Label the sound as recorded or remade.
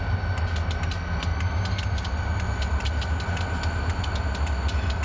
recorded